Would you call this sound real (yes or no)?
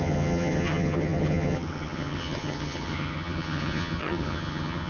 no